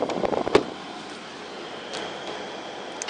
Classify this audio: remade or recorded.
recorded